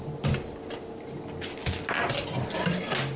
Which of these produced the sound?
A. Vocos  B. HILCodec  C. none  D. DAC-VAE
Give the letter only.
C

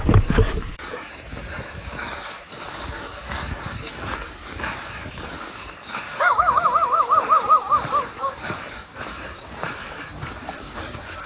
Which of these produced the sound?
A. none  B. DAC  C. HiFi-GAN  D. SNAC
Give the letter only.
B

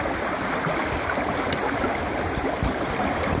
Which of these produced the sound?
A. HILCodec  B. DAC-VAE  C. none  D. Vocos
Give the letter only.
C